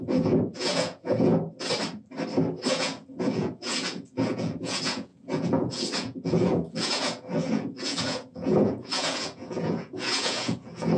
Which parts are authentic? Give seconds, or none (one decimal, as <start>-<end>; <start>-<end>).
1.3-2.7